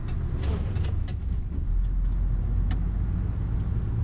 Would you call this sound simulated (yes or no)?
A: no